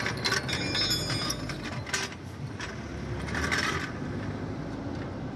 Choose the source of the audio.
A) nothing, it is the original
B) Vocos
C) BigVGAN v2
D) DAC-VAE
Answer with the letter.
A